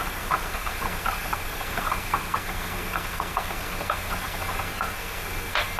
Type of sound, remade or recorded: remade